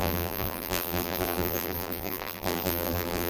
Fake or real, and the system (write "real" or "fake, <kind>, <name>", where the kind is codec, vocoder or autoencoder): fake, vocoder, BigVGAN v2